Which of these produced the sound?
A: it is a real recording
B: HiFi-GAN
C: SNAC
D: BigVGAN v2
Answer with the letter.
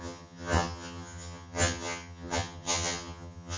B